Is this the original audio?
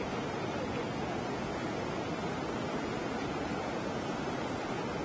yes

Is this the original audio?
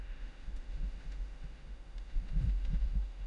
no